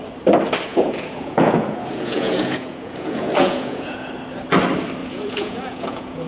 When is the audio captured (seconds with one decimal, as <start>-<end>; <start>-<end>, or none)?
0.0-0.7; 4.1-5.0